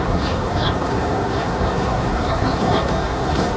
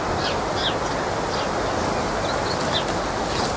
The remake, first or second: first